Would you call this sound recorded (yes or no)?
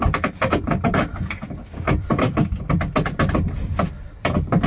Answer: no